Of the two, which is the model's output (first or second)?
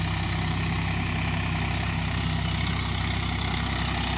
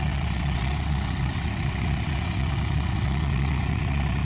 second